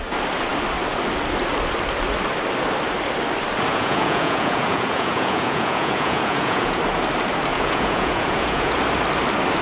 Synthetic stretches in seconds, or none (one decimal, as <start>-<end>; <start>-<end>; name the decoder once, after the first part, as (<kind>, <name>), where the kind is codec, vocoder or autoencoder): 3.7-6.8 (vocoder, Vocos); 7.5-8.8